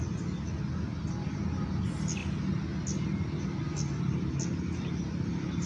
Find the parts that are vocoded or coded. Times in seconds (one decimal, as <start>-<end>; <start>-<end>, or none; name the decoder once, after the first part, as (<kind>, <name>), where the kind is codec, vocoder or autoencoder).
none